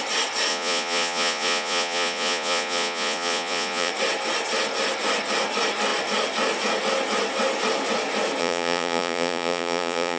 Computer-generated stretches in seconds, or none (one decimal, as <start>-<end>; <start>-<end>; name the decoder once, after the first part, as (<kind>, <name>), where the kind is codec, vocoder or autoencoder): 0.5-3.9 (vocoder, Vocos); 8.4-10.2